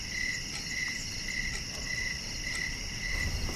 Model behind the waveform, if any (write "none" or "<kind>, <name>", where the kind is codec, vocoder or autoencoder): none